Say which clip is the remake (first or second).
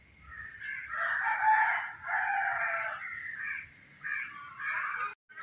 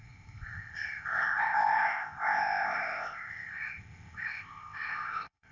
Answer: second